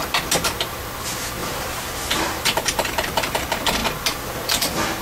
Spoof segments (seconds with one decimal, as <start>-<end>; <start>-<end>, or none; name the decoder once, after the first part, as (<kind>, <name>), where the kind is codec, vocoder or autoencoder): 1.4-3.4 (vocoder, BigVGAN v2)